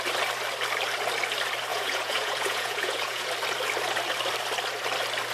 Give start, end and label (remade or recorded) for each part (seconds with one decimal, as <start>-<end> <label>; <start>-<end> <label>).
0.0-1.7 recorded; 1.7-3.3 remade; 3.3-5.3 recorded